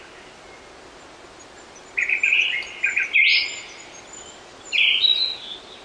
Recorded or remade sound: recorded